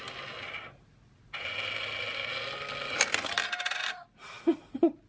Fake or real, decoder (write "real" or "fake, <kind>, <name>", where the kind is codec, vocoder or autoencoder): real